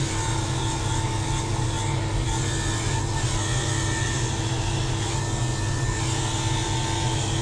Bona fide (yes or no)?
yes